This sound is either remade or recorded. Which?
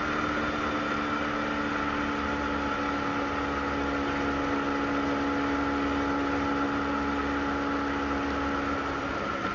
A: recorded